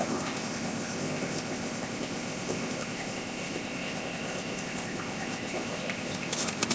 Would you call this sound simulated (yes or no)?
yes